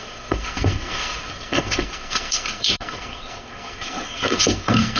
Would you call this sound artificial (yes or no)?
yes